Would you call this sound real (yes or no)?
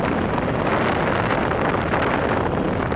yes